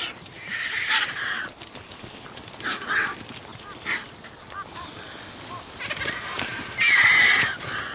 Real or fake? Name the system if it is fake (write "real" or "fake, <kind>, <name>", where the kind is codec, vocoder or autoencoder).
real